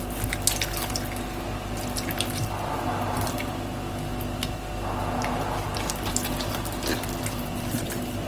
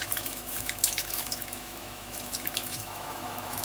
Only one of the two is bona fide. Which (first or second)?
first